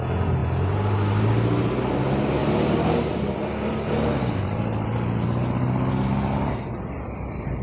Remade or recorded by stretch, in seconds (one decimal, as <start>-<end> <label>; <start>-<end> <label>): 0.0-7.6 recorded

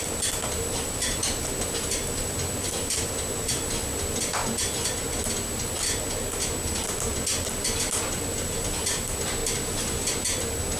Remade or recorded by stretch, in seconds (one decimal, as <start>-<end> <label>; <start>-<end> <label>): 0.0-4.4 remade; 4.4-8.1 recorded; 8.1-9.4 remade; 9.4-10.8 recorded

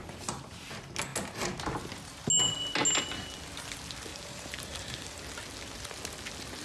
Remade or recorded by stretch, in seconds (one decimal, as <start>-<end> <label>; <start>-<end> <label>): 0.0-4.1 recorded; 4.1-5.2 remade; 5.2-6.6 recorded

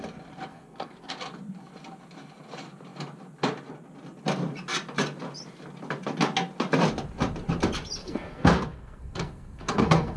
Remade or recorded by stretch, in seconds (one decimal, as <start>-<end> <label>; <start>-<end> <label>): 0.0-0.5 recorded; 0.5-1.1 remade; 1.1-8.0 recorded; 8.0-10.2 remade

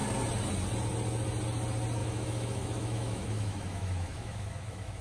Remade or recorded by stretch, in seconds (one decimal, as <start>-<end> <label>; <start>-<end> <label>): 0.0-2.0 recorded; 2.0-5.0 remade

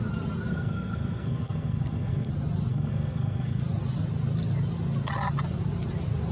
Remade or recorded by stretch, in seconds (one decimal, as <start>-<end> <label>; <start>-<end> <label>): 0.0-0.5 recorded; 0.5-2.3 remade; 2.3-2.7 recorded; 2.7-3.6 remade; 3.6-6.3 recorded

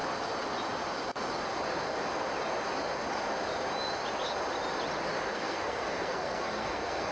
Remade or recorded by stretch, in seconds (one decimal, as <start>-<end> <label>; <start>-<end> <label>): 0.0-5.3 recorded; 5.3-7.1 remade

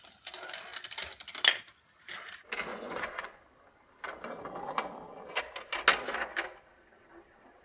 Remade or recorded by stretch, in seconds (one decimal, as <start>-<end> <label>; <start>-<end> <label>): 0.0-2.7 recorded; 2.7-3.4 remade; 3.4-7.6 recorded